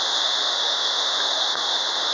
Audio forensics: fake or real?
fake